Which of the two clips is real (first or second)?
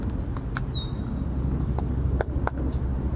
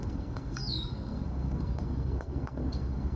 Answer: first